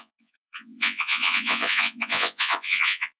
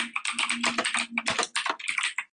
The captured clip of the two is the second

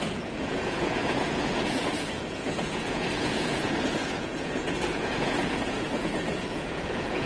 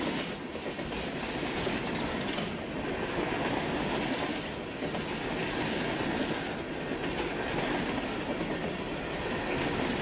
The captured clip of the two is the second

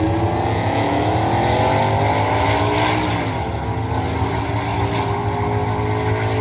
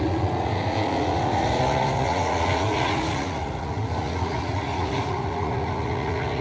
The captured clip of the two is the first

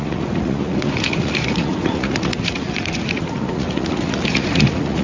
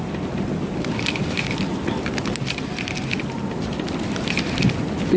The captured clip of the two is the second